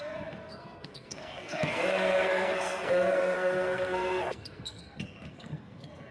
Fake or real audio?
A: fake